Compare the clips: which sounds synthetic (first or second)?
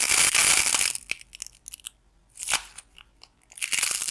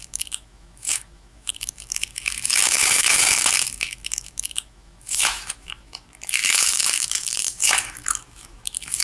second